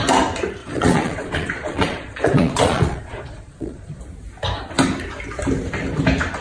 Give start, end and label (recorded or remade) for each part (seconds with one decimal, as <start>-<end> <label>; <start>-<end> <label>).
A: 0.0-0.6 recorded; 0.6-4.0 remade; 4.0-6.4 recorded